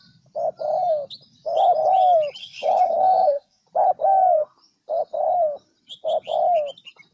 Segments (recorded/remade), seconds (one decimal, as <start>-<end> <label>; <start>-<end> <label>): 0.0-2.4 recorded; 2.4-3.6 remade; 3.6-7.1 recorded